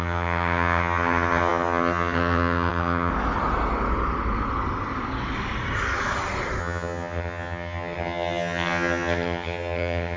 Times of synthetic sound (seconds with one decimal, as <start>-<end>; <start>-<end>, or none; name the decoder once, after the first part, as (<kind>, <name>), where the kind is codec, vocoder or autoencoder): 0.0-3.1 (vocoder, HiFi-GAN); 6.6-10.2